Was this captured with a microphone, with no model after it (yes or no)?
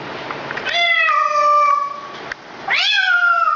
yes